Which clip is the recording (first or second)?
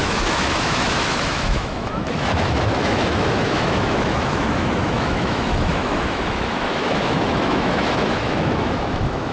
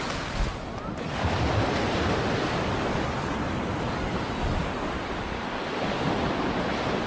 second